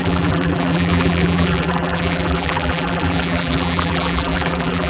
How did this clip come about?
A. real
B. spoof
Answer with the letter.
B